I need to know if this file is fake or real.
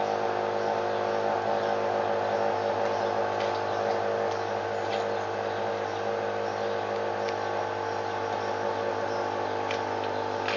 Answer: real